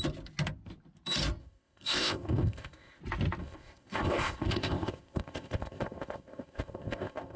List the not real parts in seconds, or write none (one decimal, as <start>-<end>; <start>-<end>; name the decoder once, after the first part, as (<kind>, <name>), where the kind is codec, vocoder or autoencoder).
1.4-3.0 (codec, ZipCodec); 3.4-7.4